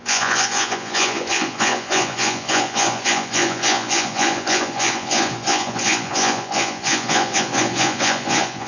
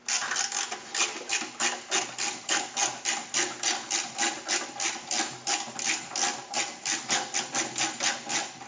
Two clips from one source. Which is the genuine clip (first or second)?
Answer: second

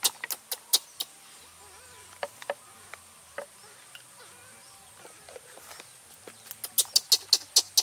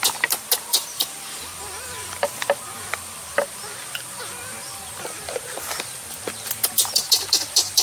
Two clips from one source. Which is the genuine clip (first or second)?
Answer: first